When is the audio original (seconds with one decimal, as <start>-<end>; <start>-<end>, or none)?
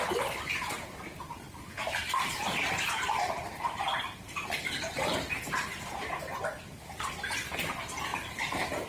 0.0-2.0; 6.2-8.1